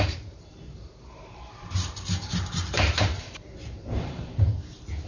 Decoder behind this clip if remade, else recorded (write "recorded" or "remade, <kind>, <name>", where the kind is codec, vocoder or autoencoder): remade, vocoder, BigVGAN v2